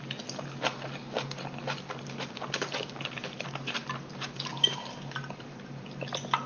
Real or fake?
real